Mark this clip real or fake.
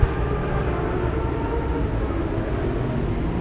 real